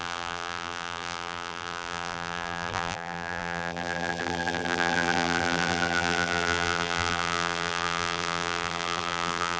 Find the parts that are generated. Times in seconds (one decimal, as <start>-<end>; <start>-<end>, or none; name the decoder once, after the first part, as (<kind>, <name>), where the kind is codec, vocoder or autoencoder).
0.0-9.6 (vocoder, BigVGAN v2)